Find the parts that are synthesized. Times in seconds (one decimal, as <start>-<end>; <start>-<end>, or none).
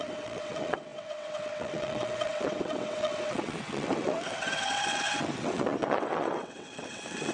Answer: 0.0-7.3